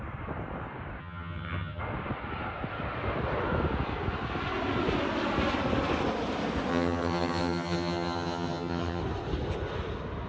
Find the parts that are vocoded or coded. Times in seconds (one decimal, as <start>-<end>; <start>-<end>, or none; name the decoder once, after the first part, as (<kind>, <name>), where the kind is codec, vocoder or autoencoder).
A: 1.0-1.8 (vocoder, HiFi-GAN); 6.7-9.0